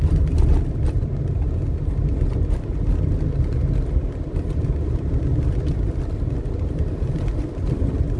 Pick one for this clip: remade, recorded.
recorded